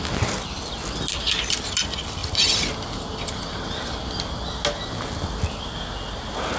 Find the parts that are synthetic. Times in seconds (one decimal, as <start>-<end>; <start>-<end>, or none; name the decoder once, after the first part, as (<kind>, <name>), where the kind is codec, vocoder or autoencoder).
none